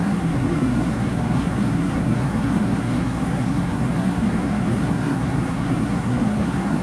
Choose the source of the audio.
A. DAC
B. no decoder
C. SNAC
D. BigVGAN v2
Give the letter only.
C